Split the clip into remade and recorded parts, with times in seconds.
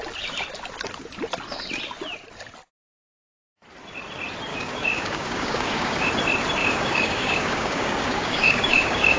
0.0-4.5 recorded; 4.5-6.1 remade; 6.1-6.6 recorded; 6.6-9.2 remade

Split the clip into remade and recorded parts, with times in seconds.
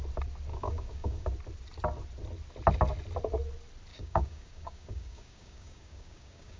0.0-0.5 recorded; 0.5-1.3 remade; 1.3-3.9 recorded; 3.9-6.6 remade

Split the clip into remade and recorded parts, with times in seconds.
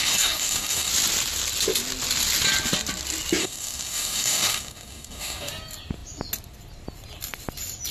0.0-0.9 remade; 0.9-3.4 recorded; 3.4-5.5 remade; 5.5-7.9 recorded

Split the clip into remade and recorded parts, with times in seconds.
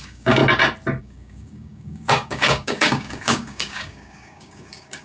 0.0-0.4 remade; 0.4-1.0 recorded; 1.0-5.0 remade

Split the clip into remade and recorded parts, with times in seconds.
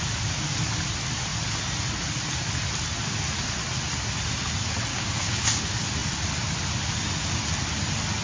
0.0-4.9 recorded; 4.9-5.6 remade; 5.6-8.2 recorded